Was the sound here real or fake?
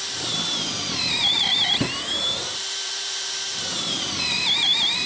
fake